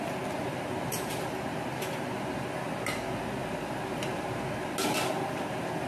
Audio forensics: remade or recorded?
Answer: recorded